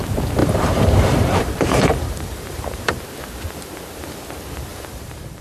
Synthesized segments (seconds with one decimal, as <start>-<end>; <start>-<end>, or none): 0.4-3.0; 4.7-5.4